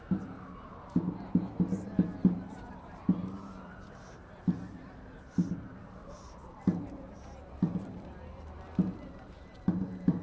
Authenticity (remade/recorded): remade